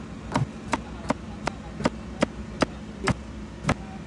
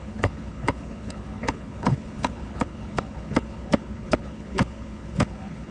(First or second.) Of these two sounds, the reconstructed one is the second